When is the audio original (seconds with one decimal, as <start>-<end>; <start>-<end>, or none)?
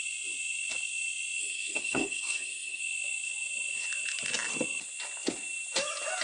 0.0-1.4; 2.8-6.2